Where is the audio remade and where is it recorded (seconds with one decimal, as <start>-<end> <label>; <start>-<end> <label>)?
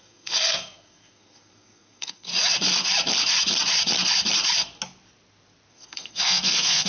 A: 0.0-2.3 remade; 2.3-5.7 recorded; 5.7-6.9 remade